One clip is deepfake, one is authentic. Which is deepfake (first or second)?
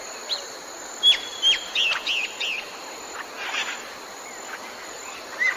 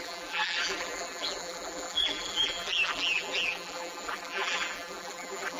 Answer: second